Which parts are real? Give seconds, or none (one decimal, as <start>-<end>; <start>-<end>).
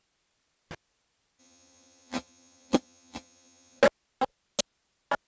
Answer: 0.0-1.4; 3.8-5.3